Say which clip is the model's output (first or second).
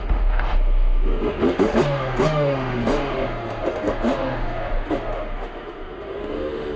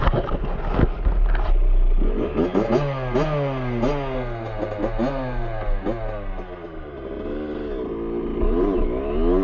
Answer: first